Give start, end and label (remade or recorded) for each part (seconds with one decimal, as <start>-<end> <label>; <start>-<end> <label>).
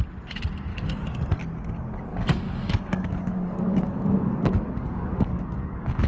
0.0-0.7 recorded; 0.7-1.2 remade; 1.2-2.1 recorded; 2.1-6.1 remade